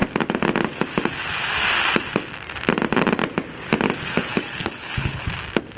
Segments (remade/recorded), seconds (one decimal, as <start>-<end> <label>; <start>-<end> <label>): 0.0-4.2 recorded; 4.2-5.3 remade; 5.3-5.8 recorded